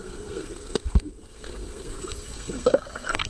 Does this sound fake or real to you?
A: fake